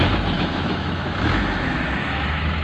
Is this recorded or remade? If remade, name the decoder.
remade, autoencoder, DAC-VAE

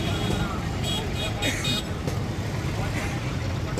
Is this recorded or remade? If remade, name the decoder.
recorded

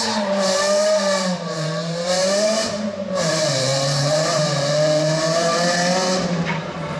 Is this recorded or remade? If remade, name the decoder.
remade, vocoder, BigVGAN v2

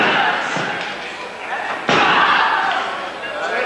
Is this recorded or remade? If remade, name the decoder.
recorded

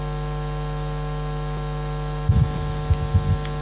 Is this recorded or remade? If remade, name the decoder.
recorded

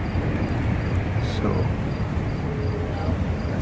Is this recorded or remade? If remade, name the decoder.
recorded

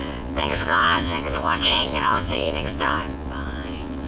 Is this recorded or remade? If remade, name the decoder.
remade, vocoder, Vocos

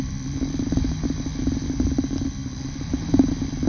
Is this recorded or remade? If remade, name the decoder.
recorded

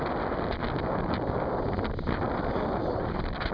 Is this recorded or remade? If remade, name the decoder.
recorded